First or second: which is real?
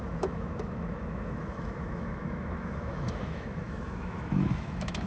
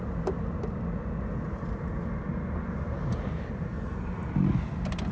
second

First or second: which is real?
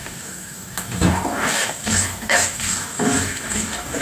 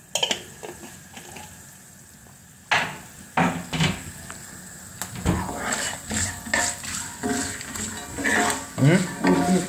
second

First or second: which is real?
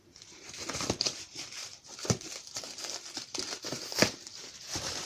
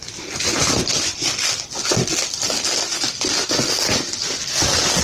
second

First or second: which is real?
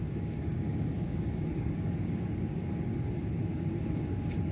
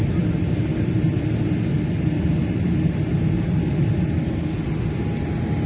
second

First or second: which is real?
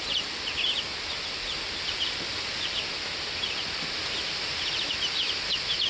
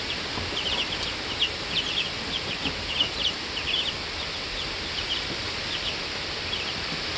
first